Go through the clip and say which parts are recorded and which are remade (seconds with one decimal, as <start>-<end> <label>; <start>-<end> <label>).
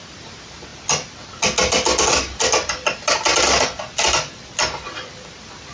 0.0-5.7 recorded